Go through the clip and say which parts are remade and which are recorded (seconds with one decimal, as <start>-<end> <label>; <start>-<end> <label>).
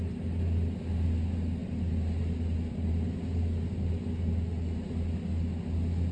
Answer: 0.0-6.1 recorded